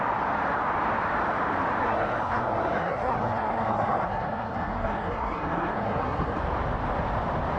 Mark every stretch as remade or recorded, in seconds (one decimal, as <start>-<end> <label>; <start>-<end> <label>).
0.0-1.8 recorded; 1.8-6.4 remade; 6.4-7.6 recorded